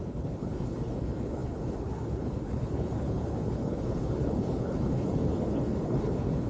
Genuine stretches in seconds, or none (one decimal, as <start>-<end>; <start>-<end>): none